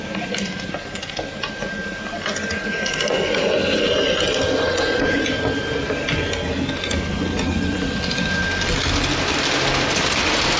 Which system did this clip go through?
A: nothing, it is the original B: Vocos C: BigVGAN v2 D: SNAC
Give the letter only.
A